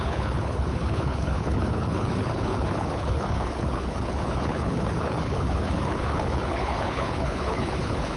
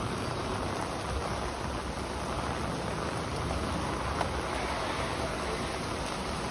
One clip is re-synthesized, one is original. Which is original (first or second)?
second